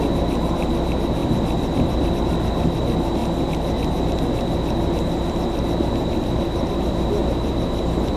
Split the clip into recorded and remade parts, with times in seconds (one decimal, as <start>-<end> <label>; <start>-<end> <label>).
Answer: 0.0-1.2 recorded; 1.2-2.1 remade; 2.1-7.2 recorded; 7.2-8.2 remade